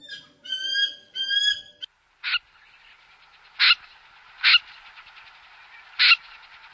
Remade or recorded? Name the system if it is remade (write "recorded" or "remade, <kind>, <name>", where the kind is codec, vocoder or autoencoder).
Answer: recorded